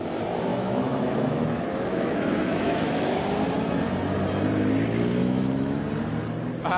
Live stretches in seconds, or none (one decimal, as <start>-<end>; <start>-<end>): 0.0-0.5; 3.2-5.2; 5.8-6.8